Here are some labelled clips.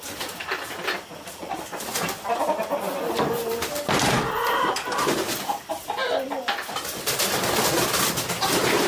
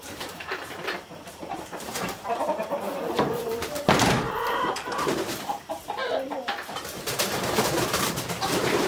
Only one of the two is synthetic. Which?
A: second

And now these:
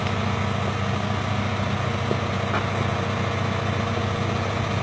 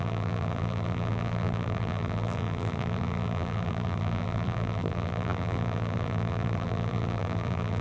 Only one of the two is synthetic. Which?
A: second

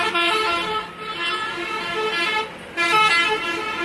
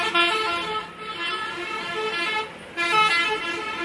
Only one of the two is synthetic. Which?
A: second